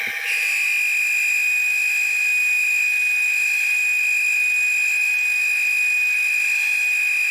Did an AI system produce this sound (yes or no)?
no